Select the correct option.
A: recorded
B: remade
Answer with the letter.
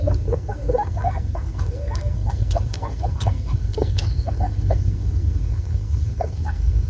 B